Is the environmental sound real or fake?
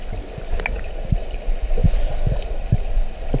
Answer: real